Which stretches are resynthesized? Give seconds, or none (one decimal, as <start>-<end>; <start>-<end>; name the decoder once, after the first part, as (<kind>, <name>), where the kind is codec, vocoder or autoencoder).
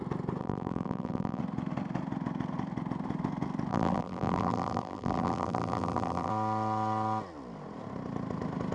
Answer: 0.4-1.4 (vocoder, BigVGAN v2); 3.7-6.3